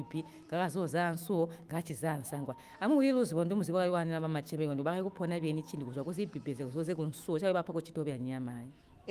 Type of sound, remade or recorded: remade